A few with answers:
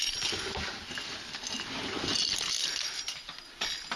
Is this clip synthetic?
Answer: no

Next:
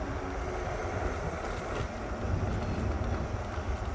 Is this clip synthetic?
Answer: no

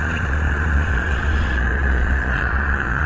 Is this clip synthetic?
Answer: yes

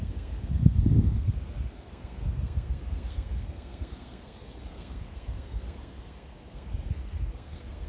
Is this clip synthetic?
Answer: yes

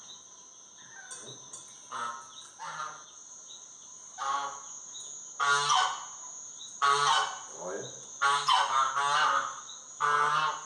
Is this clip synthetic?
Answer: no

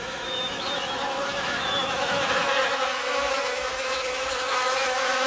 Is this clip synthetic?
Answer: yes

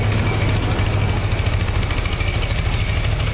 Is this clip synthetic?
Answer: no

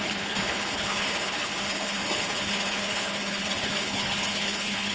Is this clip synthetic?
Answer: yes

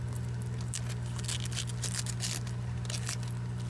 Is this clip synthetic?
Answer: no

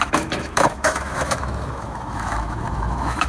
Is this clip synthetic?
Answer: yes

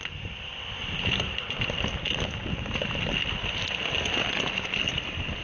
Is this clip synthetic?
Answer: no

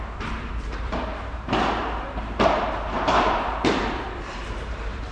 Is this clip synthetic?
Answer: yes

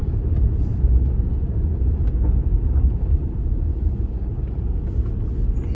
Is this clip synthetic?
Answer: no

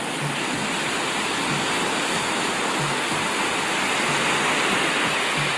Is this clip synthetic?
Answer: no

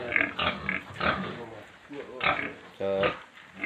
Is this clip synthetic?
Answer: no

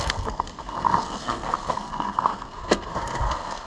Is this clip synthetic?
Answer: yes